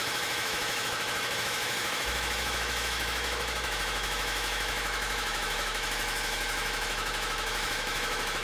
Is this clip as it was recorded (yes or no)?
no